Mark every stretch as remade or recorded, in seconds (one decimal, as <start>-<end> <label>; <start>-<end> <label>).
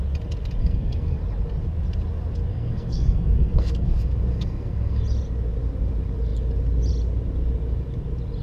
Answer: 0.0-0.6 recorded; 0.6-1.2 remade; 1.2-2.5 recorded; 2.5-5.0 remade; 5.0-8.4 recorded